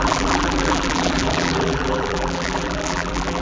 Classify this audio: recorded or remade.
remade